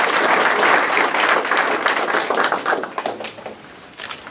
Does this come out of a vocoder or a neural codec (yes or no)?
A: no